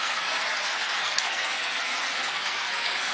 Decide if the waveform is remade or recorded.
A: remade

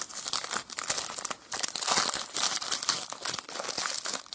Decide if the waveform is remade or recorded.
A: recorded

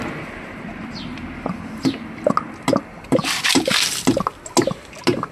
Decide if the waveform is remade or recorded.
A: recorded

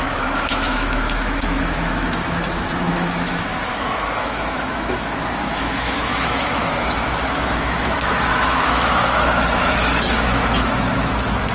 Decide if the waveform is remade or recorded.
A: remade